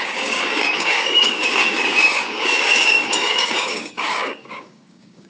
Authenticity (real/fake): fake